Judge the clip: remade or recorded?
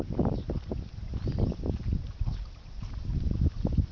recorded